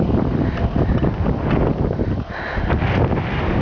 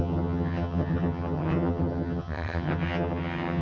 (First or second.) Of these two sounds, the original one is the first